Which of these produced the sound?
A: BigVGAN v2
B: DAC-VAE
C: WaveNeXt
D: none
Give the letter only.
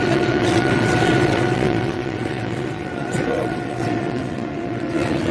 C